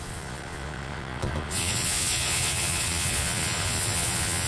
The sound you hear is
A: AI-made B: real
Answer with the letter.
A